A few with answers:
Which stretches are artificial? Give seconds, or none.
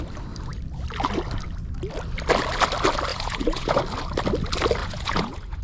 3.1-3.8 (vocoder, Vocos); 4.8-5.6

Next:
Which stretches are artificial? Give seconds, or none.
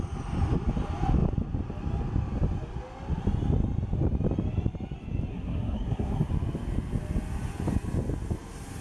5.3-6.3 (codec, SNAC)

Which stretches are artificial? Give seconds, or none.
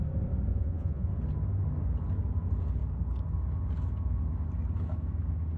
0.5-1.1 (vocoder, Vocos)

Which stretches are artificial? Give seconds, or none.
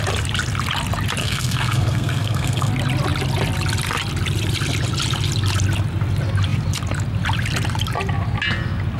1.2-2.7 (codec, SNAC)